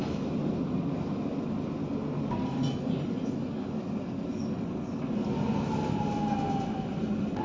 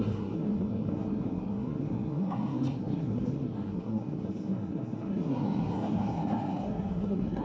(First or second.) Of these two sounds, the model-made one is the second